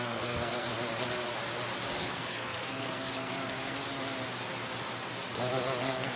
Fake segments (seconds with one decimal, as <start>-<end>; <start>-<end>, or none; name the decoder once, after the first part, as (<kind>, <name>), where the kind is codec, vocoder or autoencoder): 0.0-0.7 (codec, SNAC); 2.0-3.8; 5.8-6.2